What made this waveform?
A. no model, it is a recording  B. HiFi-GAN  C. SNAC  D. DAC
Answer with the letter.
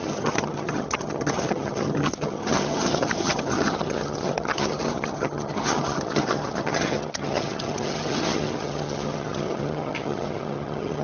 B